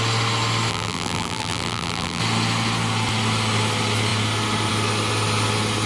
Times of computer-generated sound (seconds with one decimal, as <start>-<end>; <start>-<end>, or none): 0.7-2.2